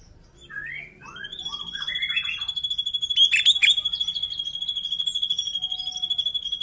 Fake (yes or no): no